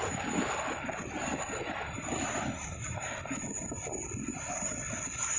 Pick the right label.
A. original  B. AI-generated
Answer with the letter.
A